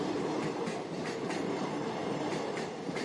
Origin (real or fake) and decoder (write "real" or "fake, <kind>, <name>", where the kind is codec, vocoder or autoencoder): fake, vocoder, BigVGAN v2